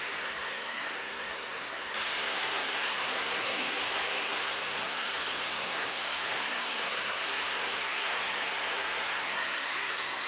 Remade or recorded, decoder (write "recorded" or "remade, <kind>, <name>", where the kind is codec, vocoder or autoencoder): remade, codec, SNAC